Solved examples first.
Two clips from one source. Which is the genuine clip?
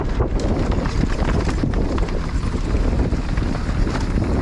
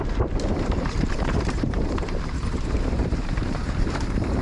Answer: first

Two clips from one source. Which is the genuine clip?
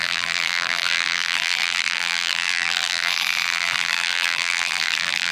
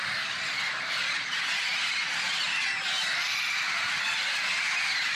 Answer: second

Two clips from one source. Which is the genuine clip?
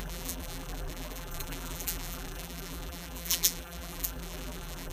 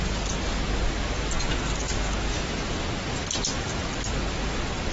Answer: second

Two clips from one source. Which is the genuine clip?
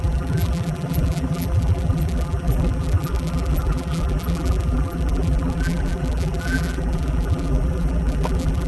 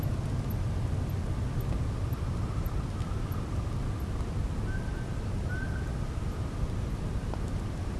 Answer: second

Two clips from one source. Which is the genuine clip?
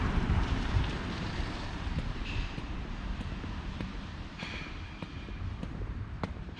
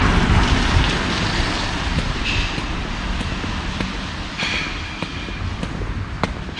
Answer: second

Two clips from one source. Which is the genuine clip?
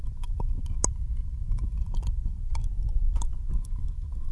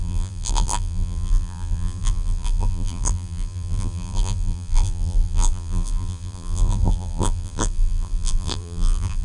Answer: first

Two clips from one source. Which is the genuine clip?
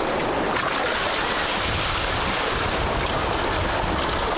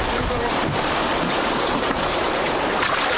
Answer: first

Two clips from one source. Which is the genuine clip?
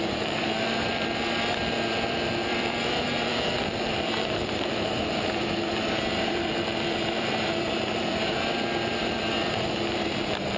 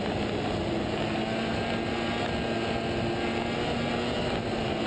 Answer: second